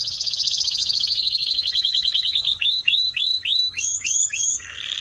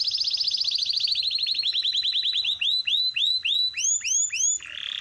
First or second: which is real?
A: second